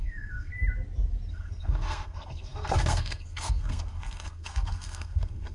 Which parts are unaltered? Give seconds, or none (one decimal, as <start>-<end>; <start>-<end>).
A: 0.5-1.3